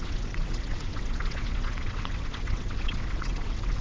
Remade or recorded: remade